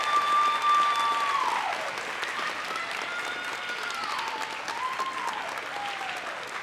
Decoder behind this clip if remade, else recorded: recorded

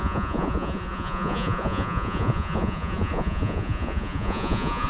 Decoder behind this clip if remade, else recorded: remade, vocoder, Vocos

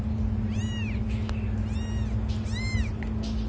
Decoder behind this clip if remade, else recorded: recorded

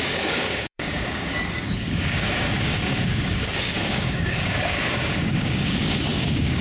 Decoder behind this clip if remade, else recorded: remade, codec, DAC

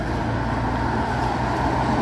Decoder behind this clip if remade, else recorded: recorded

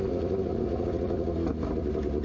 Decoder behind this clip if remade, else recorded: recorded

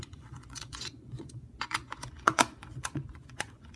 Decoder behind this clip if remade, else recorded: remade, vocoder, Vocos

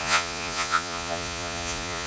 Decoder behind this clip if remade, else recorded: remade, vocoder, Vocos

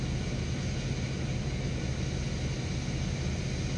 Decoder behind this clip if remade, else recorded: recorded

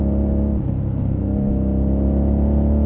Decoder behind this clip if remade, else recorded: recorded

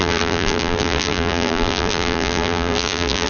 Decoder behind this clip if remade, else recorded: remade, vocoder, BigVGAN v2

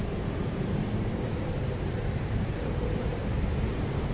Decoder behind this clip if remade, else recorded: remade, vocoder, BigVGAN v2